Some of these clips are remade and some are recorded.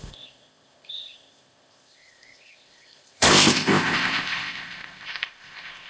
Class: remade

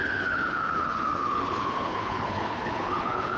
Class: remade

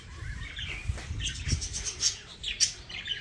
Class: recorded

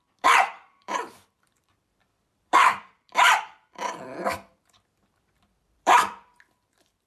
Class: remade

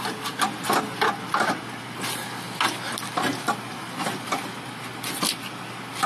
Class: recorded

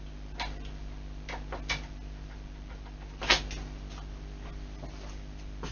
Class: recorded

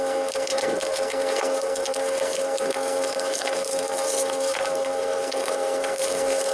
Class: remade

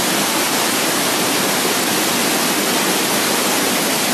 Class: recorded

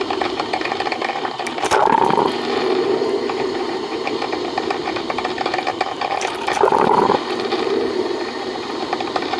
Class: remade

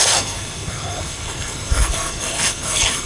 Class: remade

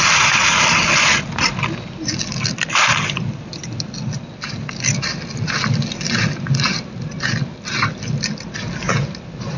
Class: recorded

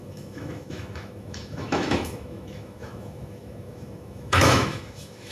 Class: remade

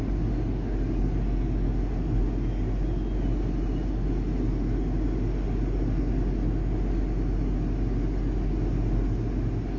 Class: recorded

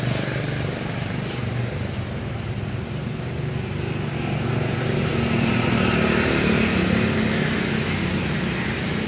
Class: recorded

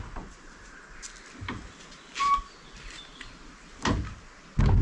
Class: recorded